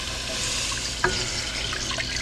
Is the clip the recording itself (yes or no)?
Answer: yes